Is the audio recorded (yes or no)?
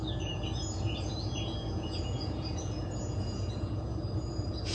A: no